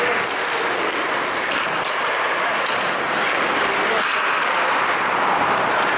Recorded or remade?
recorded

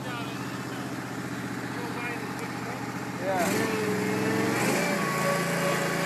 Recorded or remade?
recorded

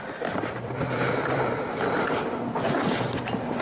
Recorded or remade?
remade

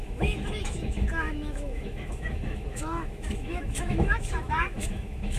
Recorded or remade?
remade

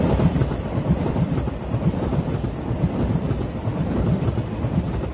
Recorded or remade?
remade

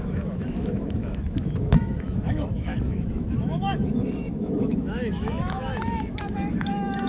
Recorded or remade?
remade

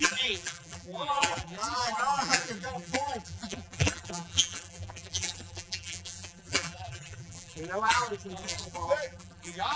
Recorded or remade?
remade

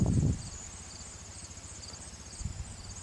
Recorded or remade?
remade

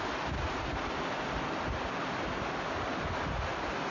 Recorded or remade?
recorded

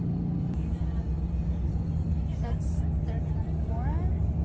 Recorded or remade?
recorded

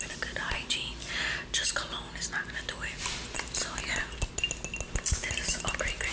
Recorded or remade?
recorded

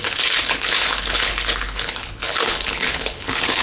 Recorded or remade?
remade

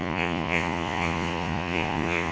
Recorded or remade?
remade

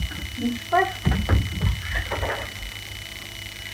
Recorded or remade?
recorded